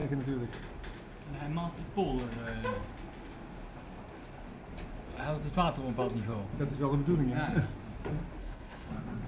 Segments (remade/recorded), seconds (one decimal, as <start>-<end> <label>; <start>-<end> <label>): 0.0-8.4 recorded; 8.4-8.9 remade; 8.9-9.3 recorded